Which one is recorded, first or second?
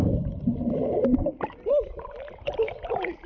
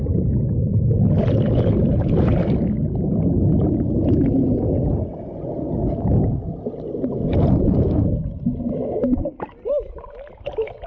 second